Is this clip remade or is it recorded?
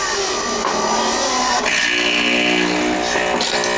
recorded